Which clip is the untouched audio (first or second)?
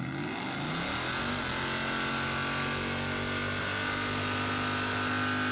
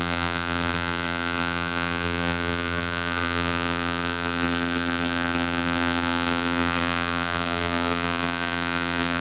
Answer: first